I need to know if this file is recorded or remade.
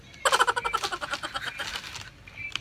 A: recorded